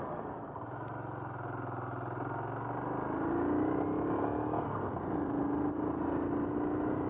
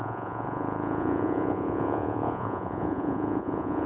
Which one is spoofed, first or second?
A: second